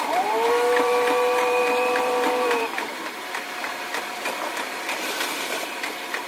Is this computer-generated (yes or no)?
yes